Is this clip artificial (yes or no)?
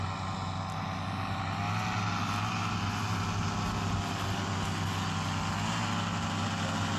no